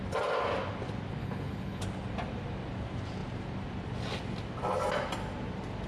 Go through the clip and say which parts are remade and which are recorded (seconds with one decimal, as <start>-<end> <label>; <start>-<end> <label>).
0.0-1.2 recorded; 1.2-1.8 remade; 1.8-5.9 recorded

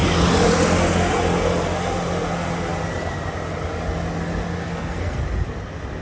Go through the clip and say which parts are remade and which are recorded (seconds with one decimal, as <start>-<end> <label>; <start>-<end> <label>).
0.0-4.6 recorded; 4.6-5.2 remade; 5.2-6.0 recorded